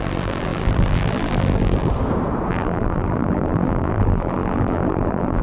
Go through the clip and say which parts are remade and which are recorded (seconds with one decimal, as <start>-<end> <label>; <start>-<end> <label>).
0.0-1.9 remade; 1.9-2.5 recorded; 2.5-5.4 remade